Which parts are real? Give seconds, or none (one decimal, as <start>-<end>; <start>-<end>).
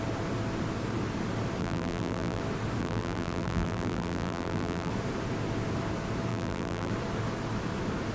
0.0-1.6; 2.4-2.8; 4.9-6.3; 6.9-8.1